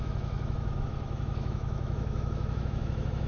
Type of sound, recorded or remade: remade